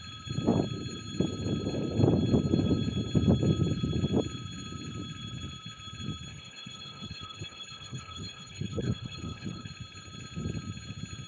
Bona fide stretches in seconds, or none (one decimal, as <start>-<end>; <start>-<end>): 0.0-6.3; 9.7-11.3